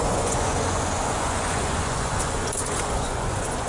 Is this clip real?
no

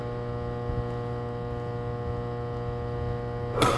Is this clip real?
yes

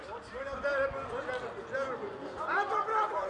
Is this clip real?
yes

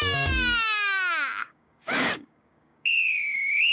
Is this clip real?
no